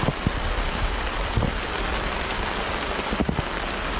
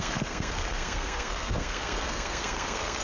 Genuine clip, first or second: first